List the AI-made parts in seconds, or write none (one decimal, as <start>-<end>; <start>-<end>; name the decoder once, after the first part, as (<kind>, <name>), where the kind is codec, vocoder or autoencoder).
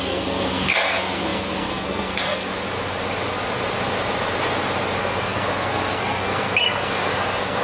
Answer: 0.0-2.5 (codec, SNAC); 5.0-7.6